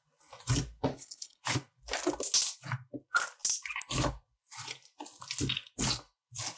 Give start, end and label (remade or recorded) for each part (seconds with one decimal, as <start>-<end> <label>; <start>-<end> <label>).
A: 0.0-0.9 recorded; 0.9-1.4 remade; 1.4-6.6 recorded